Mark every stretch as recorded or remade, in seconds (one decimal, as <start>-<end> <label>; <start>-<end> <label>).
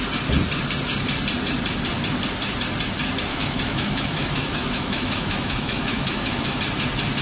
0.0-3.3 recorded; 3.3-6.6 remade; 6.6-7.2 recorded